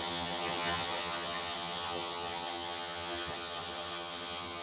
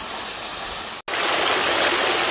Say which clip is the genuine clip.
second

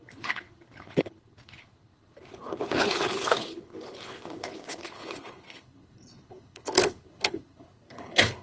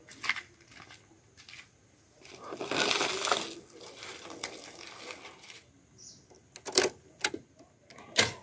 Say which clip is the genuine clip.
second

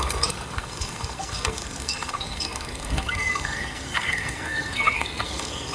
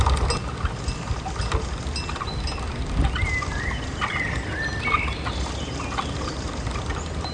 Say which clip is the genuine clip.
second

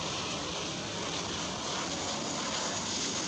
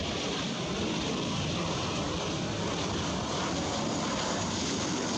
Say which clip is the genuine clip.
first